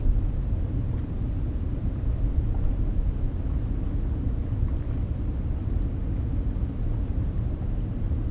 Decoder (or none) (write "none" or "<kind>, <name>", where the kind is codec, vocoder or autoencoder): none